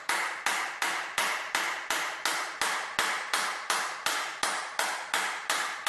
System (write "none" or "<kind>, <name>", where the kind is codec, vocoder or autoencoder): none